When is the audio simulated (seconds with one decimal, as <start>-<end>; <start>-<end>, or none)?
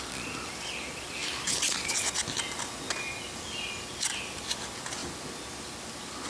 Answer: none